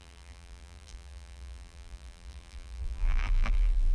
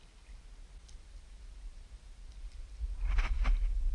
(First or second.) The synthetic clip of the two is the first